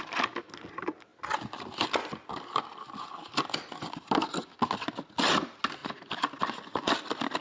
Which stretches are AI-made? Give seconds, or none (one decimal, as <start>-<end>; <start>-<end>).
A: none